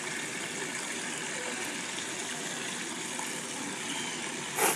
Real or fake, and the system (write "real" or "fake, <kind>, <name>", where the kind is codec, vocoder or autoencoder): real